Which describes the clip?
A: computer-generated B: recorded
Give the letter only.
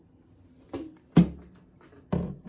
B